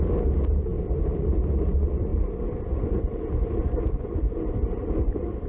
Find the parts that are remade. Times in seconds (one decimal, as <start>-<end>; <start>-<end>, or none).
none